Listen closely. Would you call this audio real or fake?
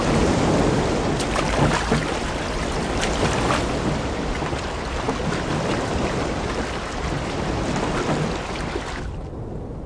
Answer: real